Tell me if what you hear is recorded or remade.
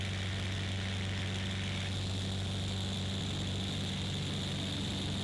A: recorded